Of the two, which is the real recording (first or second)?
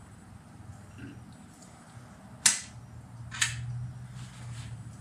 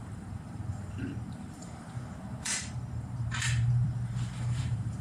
first